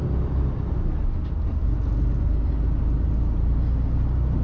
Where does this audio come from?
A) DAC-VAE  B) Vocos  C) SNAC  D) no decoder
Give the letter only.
D